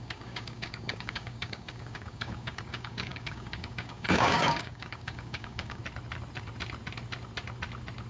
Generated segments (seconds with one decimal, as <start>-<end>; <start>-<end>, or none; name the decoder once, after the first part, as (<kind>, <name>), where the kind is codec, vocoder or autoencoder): 0.0-5.8 (codec, DAC)